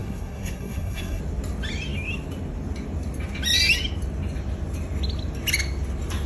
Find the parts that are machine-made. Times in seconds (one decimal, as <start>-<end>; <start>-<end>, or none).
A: 0.0-1.2